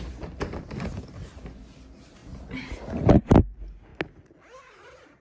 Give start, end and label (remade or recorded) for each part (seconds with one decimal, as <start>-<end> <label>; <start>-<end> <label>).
0.0-5.2 recorded